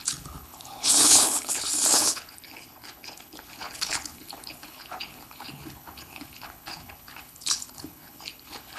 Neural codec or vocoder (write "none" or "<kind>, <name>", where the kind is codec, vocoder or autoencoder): codec, HILCodec